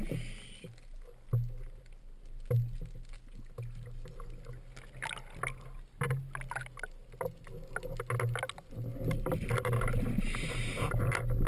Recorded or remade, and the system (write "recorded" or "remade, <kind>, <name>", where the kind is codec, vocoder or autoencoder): recorded